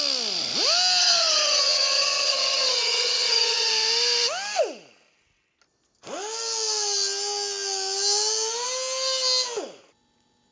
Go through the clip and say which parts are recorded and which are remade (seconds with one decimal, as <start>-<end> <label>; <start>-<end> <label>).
0.0-1.0 recorded; 1.0-3.7 remade; 3.7-10.5 recorded